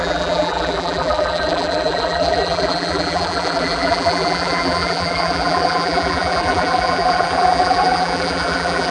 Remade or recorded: remade